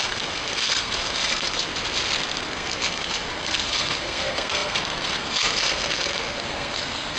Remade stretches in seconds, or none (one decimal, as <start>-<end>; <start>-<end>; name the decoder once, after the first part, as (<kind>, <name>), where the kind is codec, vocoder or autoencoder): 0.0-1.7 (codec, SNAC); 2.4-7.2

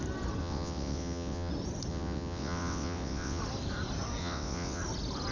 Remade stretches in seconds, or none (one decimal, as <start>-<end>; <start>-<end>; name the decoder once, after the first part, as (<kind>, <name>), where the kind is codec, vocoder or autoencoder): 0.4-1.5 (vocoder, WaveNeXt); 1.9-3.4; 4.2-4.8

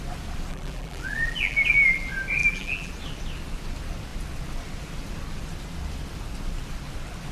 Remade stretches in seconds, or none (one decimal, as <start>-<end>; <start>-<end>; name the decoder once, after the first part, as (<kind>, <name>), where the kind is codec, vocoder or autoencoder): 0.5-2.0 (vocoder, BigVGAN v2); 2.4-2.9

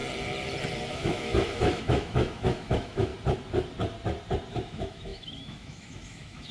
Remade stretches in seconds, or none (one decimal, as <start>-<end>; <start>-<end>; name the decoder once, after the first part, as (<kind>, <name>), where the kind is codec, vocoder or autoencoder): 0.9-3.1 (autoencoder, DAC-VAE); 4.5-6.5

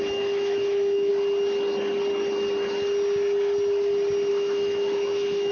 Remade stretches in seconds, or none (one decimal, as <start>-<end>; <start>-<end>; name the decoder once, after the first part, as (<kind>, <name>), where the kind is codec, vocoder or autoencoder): 0.0-1.1 (autoencoder, DAC-VAE); 4.3-5.5

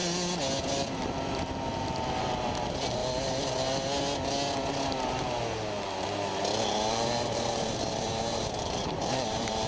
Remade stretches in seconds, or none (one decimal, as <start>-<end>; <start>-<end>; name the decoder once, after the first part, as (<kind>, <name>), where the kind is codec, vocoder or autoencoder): 2.2-3.0 (vocoder, BigVGAN v2); 6.9-9.7

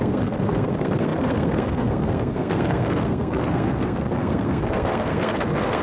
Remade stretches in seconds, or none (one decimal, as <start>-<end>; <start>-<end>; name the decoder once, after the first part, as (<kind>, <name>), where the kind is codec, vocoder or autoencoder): 0.0-5.8 (codec, SNAC)